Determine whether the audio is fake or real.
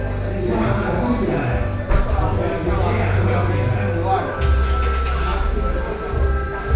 real